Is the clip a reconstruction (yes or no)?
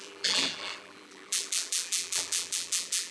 yes